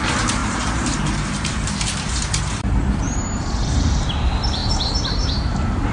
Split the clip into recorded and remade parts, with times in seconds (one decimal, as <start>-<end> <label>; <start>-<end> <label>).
0.0-5.9 remade